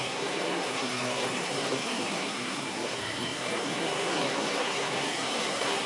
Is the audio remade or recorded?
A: remade